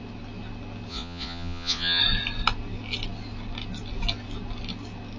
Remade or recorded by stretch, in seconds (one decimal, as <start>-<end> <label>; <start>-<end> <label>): 0.0-0.9 recorded; 0.9-2.0 remade; 2.0-5.2 recorded